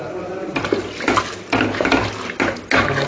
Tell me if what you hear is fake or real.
real